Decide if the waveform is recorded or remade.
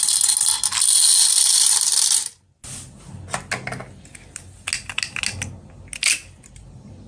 recorded